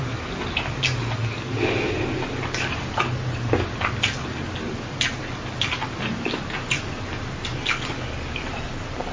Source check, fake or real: real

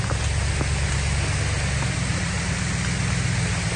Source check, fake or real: real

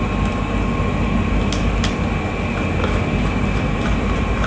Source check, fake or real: real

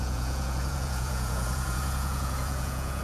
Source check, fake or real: fake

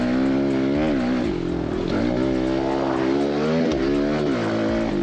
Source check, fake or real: real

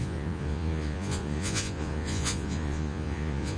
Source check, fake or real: fake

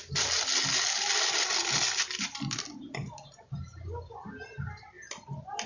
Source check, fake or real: real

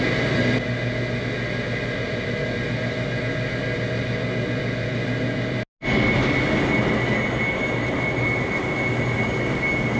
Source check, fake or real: real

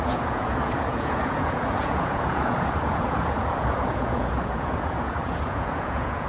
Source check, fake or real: fake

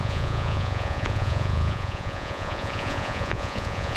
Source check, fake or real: fake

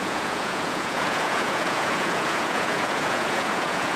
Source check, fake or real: fake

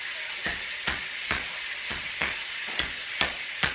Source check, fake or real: fake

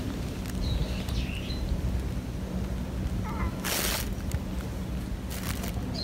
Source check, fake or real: real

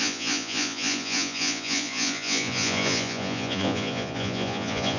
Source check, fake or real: fake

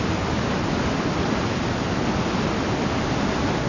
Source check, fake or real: real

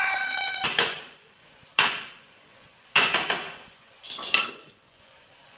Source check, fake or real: fake